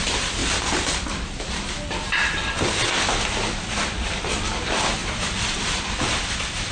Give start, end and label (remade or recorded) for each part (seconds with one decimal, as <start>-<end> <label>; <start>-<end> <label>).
0.0-5.0 recorded; 5.0-6.3 remade; 6.3-6.7 recorded